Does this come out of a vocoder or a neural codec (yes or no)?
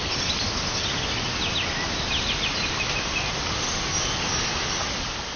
no